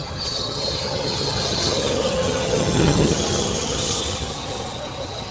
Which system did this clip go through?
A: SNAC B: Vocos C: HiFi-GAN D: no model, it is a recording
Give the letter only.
C